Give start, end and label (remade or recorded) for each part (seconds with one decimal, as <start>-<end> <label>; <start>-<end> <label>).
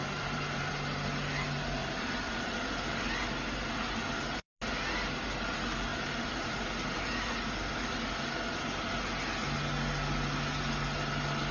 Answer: 0.0-0.7 remade; 0.7-1.8 recorded; 1.8-2.9 remade; 2.9-5.9 recorded; 5.9-7.7 remade; 7.7-11.5 recorded